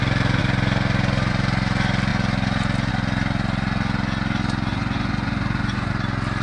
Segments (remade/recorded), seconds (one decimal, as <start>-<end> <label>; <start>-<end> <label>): 0.0-4.7 recorded; 4.7-5.9 remade; 5.9-6.4 recorded